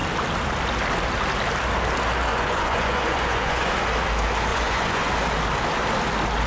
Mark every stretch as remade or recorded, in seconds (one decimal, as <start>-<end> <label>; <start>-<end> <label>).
0.0-2.3 recorded; 2.3-3.7 remade; 3.7-4.5 recorded; 4.5-5.1 remade; 5.1-6.5 recorded